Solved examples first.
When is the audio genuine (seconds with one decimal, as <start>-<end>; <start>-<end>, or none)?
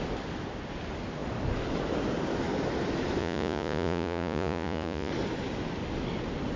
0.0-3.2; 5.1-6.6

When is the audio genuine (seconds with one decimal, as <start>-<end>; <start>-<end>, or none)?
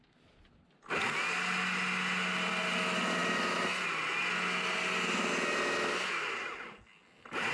0.0-7.5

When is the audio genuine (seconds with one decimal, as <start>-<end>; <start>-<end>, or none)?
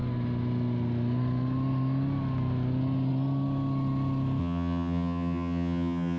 0.0-4.4